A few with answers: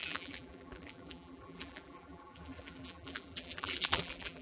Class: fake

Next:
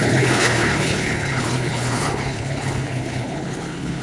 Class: fake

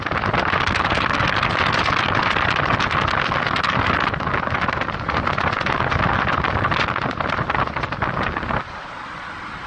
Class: real